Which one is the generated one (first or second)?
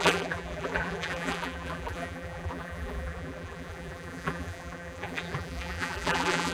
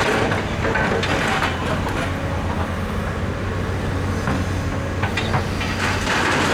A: first